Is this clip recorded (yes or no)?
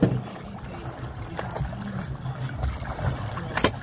yes